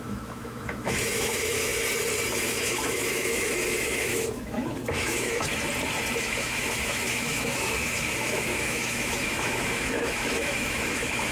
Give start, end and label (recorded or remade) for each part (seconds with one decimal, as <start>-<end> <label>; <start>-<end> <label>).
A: 0.0-1.7 remade; 1.7-2.3 recorded; 2.3-5.5 remade; 5.5-6.2 recorded; 6.2-11.3 remade